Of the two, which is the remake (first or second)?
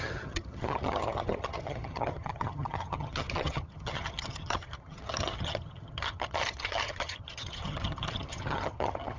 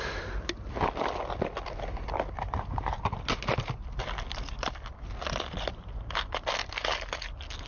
first